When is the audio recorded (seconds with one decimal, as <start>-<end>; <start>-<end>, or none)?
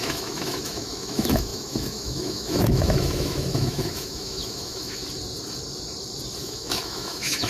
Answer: 5.0-6.4